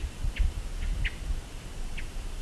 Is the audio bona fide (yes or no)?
yes